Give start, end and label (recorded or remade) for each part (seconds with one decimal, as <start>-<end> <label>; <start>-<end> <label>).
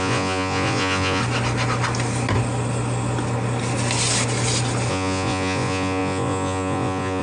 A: 0.0-1.2 remade; 1.2-4.9 recorded; 4.9-7.2 remade